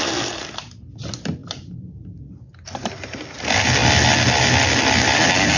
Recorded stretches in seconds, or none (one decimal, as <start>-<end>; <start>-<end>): 0.0-1.4; 3.2-5.6